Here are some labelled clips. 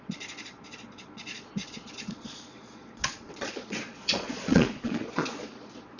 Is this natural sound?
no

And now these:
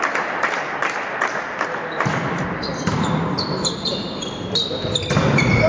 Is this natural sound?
yes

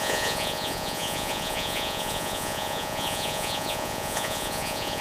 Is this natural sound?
no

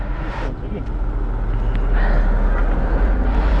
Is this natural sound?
yes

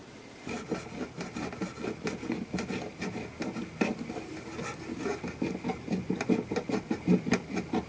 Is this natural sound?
yes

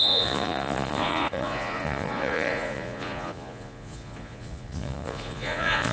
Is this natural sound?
no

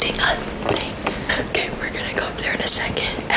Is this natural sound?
yes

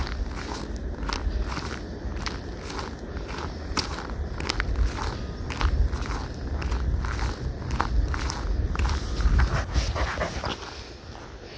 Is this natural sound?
yes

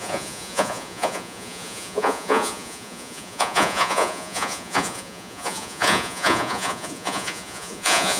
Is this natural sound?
no